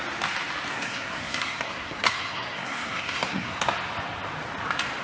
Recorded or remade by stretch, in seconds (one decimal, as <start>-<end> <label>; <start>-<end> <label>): 0.0-0.7 recorded; 0.7-3.7 remade; 3.7-5.0 recorded